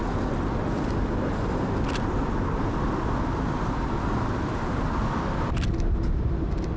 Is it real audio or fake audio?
real